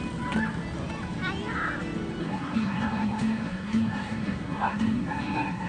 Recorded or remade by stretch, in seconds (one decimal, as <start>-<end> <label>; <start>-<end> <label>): 0.0-2.2 recorded; 2.2-5.7 remade